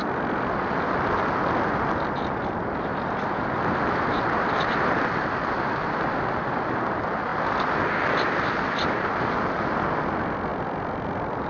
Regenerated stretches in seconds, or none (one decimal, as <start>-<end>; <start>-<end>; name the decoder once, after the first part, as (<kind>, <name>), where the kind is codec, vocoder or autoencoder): none